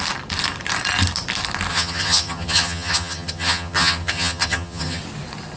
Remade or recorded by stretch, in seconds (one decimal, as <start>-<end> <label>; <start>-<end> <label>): 0.0-1.7 recorded; 1.7-5.0 remade; 5.0-5.6 recorded